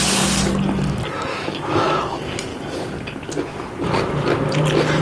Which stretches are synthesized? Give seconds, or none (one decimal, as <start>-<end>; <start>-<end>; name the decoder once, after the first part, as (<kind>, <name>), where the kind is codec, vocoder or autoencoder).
1.3-2.0 (autoencoder, DAC-VAE)